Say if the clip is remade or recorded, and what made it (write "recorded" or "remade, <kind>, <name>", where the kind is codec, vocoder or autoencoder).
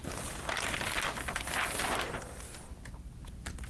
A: recorded